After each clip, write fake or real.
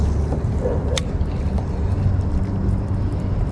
real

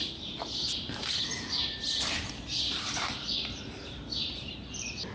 fake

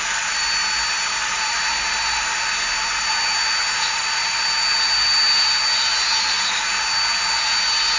real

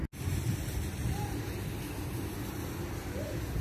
real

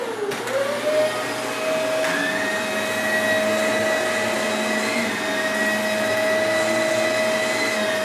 real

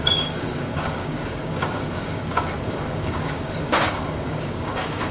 fake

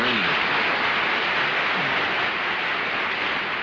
real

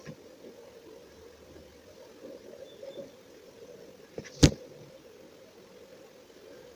real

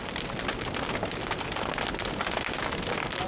real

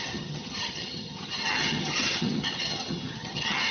fake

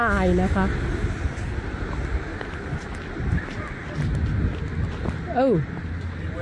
real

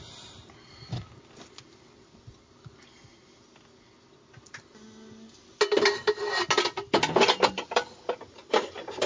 real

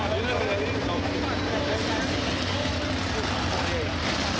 real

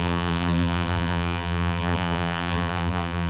fake